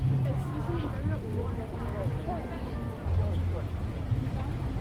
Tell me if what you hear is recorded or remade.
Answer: remade